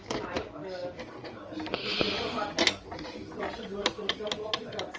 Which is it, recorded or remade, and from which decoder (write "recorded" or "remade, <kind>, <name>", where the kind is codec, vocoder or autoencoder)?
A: recorded